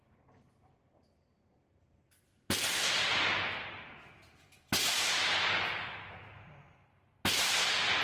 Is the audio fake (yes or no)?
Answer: no